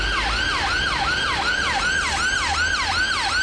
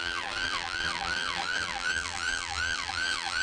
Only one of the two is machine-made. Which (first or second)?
second